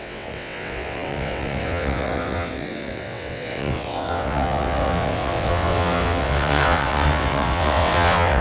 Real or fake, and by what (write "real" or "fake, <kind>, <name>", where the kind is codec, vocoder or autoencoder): fake, vocoder, WaveNeXt